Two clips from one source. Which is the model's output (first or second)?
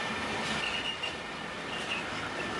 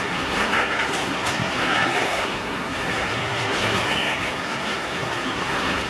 second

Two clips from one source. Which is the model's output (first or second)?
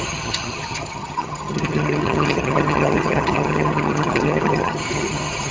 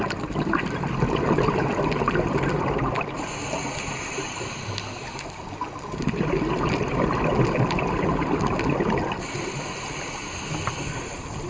first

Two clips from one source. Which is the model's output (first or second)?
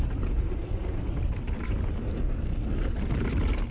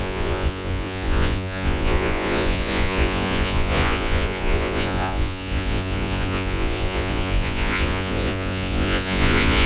second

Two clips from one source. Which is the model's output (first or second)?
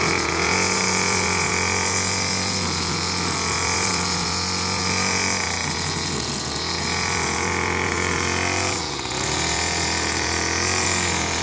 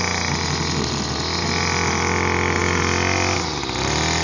first